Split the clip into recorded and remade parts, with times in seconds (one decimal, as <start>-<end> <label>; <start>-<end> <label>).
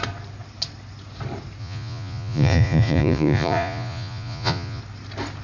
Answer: 0.0-1.6 recorded; 1.6-4.8 remade; 4.8-5.4 recorded